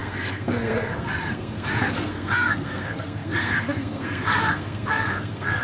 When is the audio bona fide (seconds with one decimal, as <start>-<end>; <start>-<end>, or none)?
none